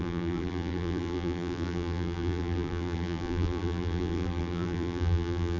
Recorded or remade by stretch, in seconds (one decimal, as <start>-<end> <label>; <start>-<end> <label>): 0.0-5.6 remade